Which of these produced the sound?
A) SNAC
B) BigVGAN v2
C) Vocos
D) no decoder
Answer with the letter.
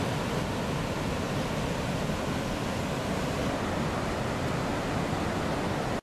D